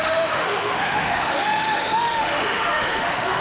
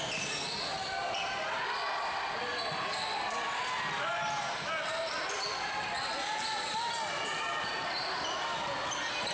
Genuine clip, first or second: second